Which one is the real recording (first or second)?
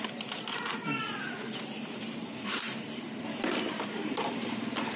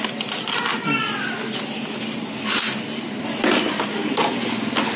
second